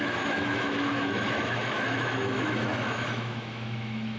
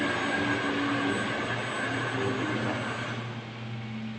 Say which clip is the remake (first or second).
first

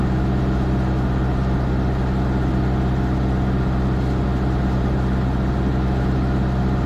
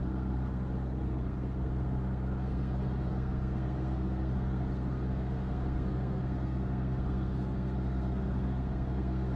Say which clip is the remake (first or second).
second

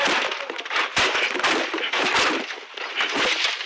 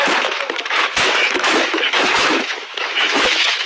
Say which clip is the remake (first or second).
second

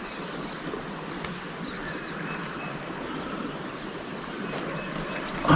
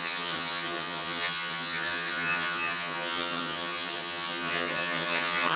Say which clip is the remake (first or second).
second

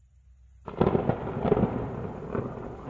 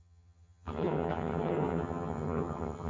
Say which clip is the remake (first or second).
second